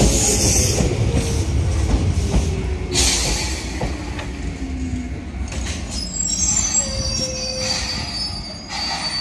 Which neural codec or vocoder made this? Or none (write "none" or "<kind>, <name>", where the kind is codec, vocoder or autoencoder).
none